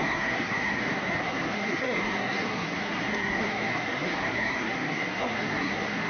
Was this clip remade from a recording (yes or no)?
yes